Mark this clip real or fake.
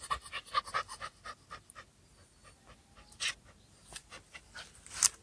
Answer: real